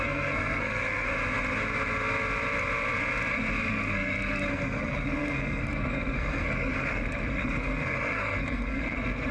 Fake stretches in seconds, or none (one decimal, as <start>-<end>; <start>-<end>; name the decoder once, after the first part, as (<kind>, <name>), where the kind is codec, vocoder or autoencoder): 0.0-1.1 (codec, SNAC); 3.7-9.3